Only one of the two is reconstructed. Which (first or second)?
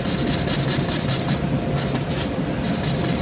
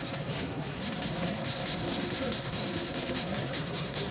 second